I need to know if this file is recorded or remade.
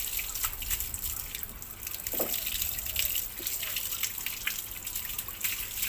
recorded